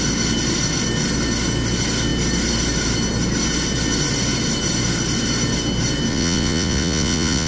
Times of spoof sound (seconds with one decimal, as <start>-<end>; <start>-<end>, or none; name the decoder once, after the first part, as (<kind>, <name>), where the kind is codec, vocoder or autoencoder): 6.1-7.5 (vocoder, Vocos)